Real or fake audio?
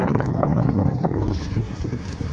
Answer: fake